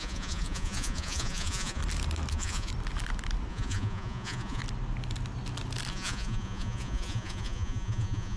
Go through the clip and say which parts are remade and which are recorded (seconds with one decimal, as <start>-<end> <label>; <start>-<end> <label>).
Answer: 0.0-1.8 remade; 1.8-2.3 recorded; 2.3-2.7 remade; 2.7-3.5 recorded; 3.5-4.6 remade; 4.6-5.9 recorded; 5.9-8.4 remade

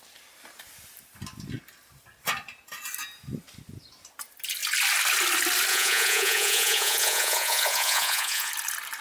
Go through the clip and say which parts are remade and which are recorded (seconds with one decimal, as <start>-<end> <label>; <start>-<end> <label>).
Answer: 0.0-5.7 recorded; 5.7-8.5 remade; 8.5-9.0 recorded

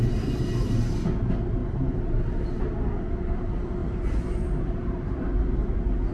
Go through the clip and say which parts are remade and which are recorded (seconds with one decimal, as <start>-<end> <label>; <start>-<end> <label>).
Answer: 0.0-6.1 recorded

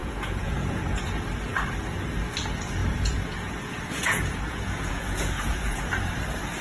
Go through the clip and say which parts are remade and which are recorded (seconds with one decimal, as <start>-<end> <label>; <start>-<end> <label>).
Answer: 0.0-0.8 remade; 0.8-2.8 recorded; 2.8-5.8 remade; 5.8-6.6 recorded

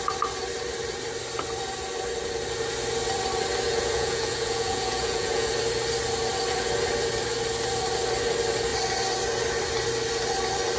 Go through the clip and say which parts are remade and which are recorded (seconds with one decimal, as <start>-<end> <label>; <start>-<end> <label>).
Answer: 0.0-3.7 recorded; 3.7-5.5 remade; 5.5-10.8 recorded

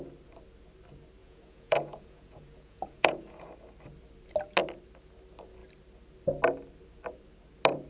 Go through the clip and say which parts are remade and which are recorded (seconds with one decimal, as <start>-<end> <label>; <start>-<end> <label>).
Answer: 0.0-1.2 recorded; 1.2-3.5 remade; 3.5-7.9 recorded

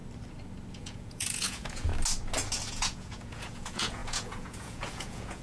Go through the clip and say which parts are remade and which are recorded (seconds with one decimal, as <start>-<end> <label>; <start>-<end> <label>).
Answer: 0.0-0.7 recorded; 0.7-1.9 remade; 1.9-2.7 recorded; 2.7-5.4 remade

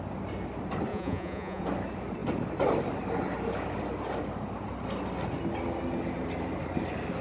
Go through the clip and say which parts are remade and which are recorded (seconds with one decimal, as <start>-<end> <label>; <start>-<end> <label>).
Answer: 0.0-0.9 recorded; 0.9-1.6 remade; 1.6-7.2 recorded